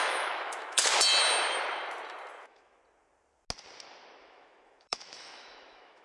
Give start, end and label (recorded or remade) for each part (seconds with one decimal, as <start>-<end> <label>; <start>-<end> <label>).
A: 0.0-0.9 remade; 0.9-2.4 recorded; 2.4-2.8 remade; 2.8-4.2 recorded; 4.2-6.0 remade